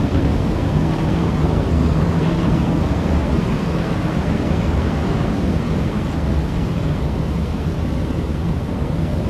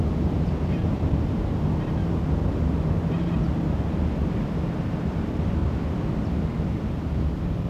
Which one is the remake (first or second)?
first